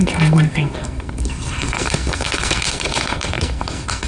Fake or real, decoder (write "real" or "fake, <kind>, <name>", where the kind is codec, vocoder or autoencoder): fake, codec, SNAC